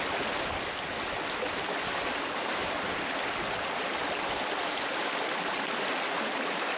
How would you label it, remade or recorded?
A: recorded